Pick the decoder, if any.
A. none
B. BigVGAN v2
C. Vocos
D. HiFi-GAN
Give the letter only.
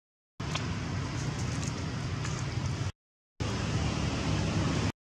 A